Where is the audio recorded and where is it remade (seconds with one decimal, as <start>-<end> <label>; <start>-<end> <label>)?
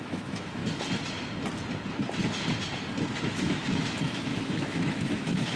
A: 0.0-0.6 remade; 0.6-3.2 recorded; 3.2-5.6 remade